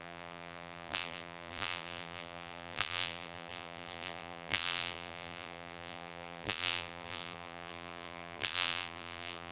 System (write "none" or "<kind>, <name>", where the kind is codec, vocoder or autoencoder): vocoder, BigVGAN v2